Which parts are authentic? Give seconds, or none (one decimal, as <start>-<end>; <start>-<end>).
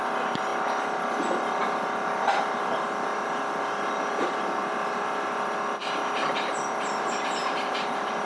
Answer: 0.0-7.4